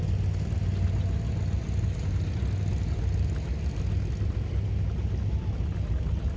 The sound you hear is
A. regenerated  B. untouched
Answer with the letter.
B